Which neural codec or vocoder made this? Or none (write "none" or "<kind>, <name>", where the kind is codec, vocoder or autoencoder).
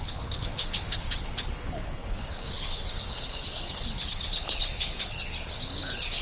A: codec, HILCodec